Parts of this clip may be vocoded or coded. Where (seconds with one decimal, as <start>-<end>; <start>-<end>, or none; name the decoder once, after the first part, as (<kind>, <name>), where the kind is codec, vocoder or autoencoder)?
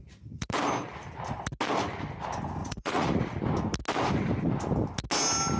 2.6-3.4 (vocoder, Vocos)